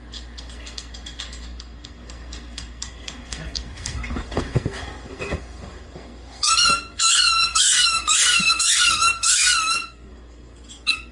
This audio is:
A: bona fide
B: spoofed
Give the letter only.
B